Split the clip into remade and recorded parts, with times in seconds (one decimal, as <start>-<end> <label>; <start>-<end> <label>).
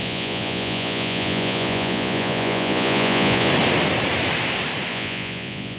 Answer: 0.0-3.5 remade; 3.5-4.9 recorded; 4.9-5.8 remade